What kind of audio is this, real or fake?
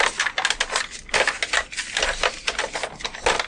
real